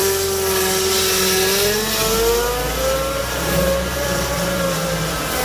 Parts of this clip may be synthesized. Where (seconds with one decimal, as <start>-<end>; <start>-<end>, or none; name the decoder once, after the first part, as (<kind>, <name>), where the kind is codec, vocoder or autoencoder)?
3.2-5.4 (vocoder, BigVGAN v2)

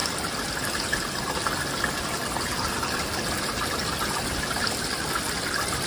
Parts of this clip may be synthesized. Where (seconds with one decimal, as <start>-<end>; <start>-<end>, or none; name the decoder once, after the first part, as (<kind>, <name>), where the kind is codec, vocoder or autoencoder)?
none

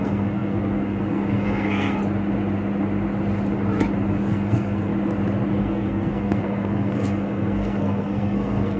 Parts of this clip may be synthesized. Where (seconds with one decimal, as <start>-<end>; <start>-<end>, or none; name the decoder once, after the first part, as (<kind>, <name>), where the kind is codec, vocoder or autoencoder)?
0.0-2.0 (codec, SNAC); 4.1-4.9; 5.6-8.8